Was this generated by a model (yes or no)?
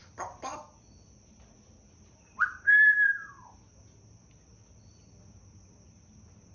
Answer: no